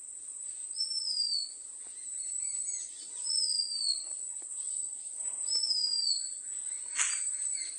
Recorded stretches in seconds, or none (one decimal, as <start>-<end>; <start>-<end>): 0.0-2.7; 5.6-7.8